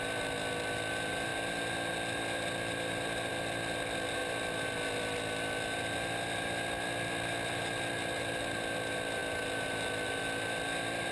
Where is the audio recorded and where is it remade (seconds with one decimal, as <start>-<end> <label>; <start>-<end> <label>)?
0.0-11.1 recorded